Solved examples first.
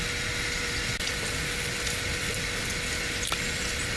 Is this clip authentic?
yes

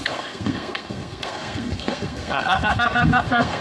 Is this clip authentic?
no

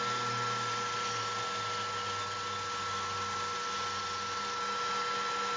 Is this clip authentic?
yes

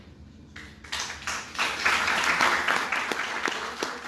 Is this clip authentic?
yes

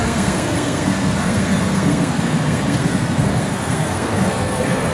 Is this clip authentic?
no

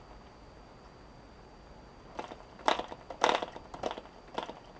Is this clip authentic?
yes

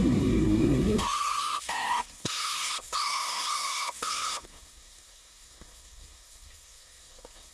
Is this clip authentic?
no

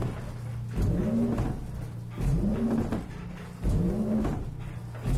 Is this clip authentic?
yes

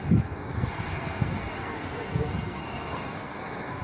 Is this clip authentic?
no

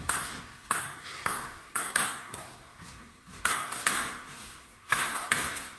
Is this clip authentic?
no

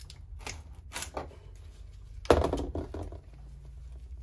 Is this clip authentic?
yes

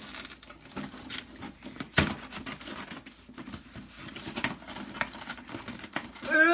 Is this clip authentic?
yes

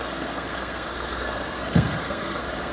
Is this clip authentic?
no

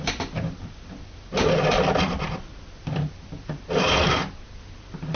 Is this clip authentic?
yes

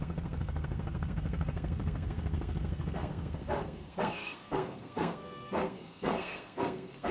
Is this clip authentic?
no